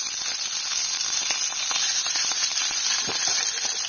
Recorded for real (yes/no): yes